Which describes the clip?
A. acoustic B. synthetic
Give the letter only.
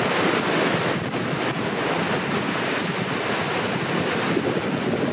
A